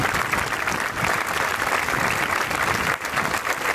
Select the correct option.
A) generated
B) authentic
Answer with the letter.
B